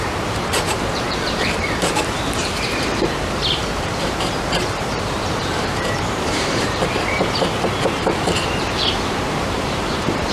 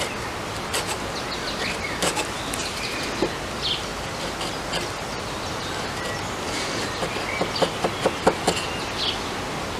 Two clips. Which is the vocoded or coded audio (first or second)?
first